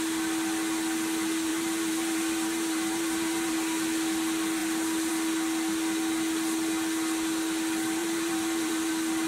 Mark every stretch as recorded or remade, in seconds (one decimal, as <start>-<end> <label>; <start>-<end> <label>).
0.0-1.5 recorded; 1.5-3.5 remade; 3.5-8.0 recorded; 8.0-8.9 remade; 8.9-9.3 recorded